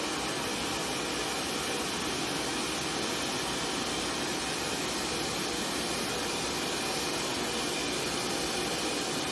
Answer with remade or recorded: recorded